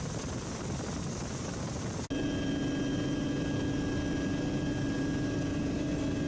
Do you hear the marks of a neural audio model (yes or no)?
no